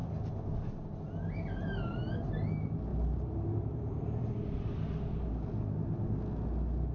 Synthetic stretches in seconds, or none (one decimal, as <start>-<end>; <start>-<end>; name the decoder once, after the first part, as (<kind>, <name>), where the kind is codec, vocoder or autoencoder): 2.9-5.3 (vocoder, BigVGAN v2)